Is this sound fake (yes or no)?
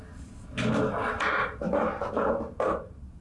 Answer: no